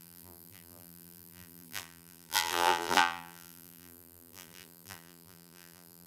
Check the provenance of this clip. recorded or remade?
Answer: remade